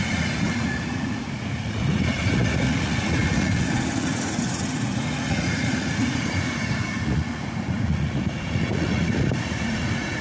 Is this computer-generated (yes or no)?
yes